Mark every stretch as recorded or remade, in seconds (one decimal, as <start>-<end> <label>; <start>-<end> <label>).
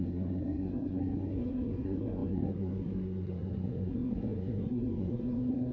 0.0-5.7 remade